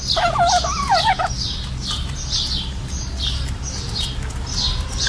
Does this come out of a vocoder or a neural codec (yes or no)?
no